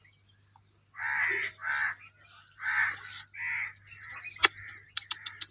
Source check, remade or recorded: recorded